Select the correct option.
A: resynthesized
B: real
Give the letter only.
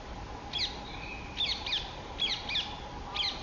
B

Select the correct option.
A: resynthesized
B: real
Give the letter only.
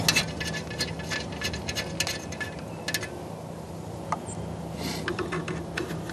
B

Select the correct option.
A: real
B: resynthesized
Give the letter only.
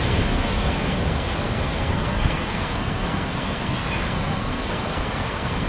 B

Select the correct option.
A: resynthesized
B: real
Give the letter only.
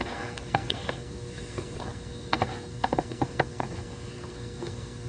A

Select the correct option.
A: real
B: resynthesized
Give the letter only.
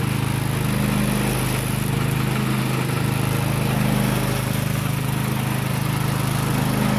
A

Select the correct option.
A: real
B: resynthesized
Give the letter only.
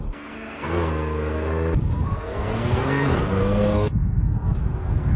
B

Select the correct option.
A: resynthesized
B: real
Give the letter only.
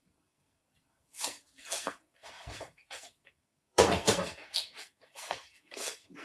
A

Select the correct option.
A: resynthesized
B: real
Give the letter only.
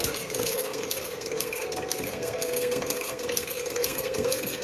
A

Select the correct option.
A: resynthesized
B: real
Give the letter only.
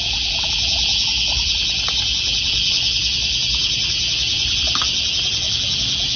B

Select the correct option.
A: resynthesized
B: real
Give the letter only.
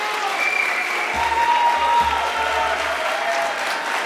B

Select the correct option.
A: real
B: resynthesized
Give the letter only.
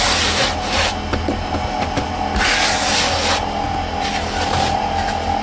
A